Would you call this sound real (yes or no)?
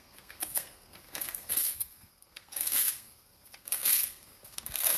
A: no